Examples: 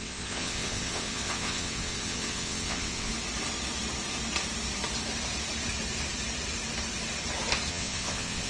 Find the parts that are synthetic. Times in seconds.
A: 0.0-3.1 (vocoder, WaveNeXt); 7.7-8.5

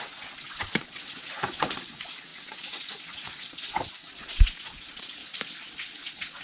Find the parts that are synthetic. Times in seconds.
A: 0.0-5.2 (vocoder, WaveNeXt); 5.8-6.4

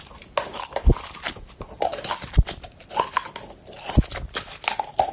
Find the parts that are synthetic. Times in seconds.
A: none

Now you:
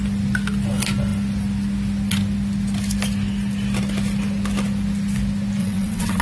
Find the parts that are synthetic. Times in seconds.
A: 5.6-6.2 (vocoder, WaveNeXt)